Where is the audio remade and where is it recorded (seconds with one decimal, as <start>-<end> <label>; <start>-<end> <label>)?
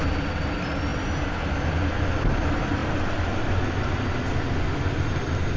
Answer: 0.0-5.6 recorded